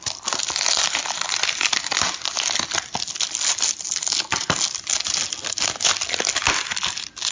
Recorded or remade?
recorded